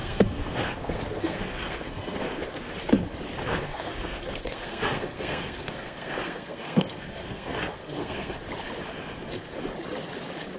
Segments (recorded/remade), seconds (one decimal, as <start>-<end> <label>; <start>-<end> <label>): 0.0-2.7 remade; 2.7-3.5 recorded; 3.5-8.4 remade; 8.4-10.6 recorded